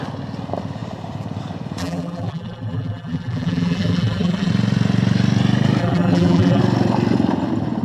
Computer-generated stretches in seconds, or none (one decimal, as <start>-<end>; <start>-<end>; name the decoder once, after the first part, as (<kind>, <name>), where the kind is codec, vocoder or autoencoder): 1.8-4.5 (vocoder, BigVGAN v2); 5.8-6.6